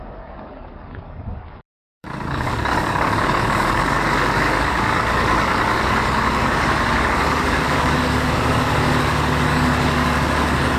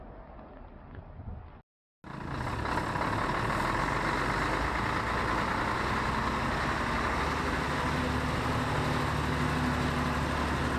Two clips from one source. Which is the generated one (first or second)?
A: first